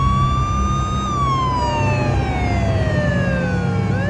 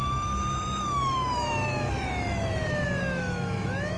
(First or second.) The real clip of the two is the first